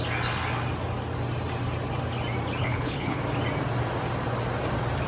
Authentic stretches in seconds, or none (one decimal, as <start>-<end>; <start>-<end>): 0.0-2.6; 3.2-5.1